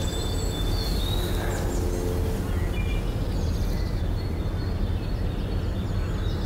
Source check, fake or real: real